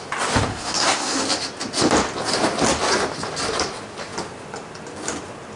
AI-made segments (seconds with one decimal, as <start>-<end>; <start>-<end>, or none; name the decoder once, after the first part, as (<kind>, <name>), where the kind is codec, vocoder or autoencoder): 0.5-1.2 (codec, SNAC)